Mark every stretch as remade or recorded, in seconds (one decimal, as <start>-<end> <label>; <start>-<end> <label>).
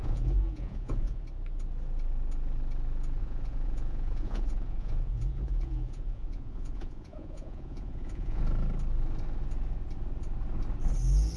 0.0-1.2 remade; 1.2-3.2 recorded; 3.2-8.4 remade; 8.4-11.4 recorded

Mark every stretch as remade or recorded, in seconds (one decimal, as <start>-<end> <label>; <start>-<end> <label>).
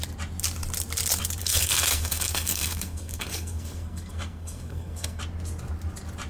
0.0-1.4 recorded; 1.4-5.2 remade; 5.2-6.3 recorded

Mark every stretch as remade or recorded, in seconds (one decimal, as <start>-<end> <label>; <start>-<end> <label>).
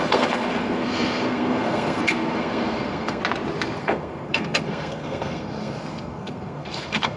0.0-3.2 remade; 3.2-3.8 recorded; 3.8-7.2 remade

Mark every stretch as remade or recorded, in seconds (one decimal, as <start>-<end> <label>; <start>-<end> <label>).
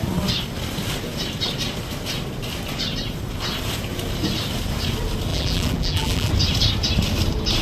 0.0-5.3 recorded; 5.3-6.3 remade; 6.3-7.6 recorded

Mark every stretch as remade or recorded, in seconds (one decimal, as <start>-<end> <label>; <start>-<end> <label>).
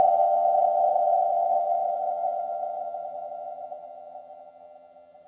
0.0-5.3 remade